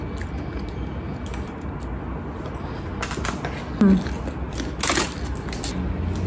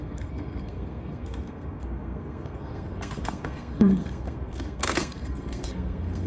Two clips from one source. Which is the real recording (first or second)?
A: first